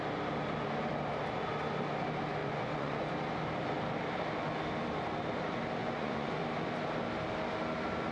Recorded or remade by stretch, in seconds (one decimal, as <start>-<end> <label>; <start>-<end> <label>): 0.0-2.4 recorded; 2.4-3.1 remade; 3.1-5.8 recorded; 5.8-6.4 remade; 6.4-8.1 recorded